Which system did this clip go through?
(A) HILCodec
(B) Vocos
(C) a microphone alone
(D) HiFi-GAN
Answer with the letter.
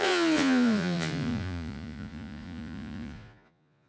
B